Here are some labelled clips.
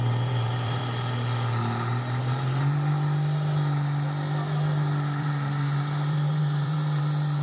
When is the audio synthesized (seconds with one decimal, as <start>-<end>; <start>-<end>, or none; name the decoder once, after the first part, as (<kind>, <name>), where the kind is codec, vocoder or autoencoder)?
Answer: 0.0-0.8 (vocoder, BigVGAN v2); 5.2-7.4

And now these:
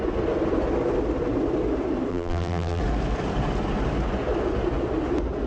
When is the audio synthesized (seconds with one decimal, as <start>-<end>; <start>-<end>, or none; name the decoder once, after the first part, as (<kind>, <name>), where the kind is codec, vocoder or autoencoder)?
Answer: 2.1-2.8 (vocoder, BigVGAN v2)

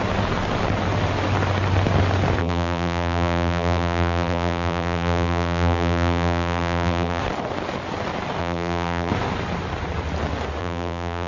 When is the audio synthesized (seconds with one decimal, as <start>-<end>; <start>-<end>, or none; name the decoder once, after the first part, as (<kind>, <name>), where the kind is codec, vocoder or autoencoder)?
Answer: 2.4-7.2 (vocoder, BigVGAN v2); 8.4-9.1; 10.6-11.3